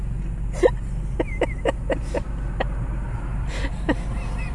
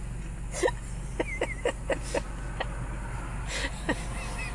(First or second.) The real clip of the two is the second